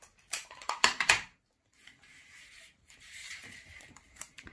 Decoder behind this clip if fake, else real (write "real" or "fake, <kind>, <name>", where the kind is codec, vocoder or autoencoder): fake, vocoder, BigVGAN v2